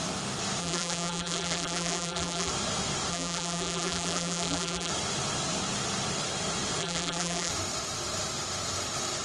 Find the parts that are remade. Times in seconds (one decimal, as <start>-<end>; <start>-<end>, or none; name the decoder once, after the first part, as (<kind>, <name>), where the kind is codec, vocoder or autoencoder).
0.6-2.5 (vocoder, BigVGAN v2); 3.1-4.9; 6.8-7.5